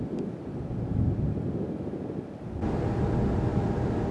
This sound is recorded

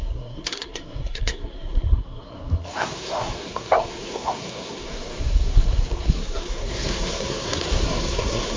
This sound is remade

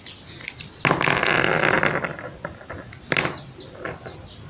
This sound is recorded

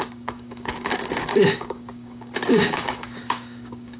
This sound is remade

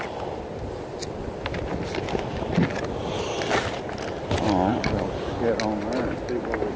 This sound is recorded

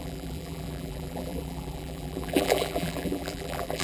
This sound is remade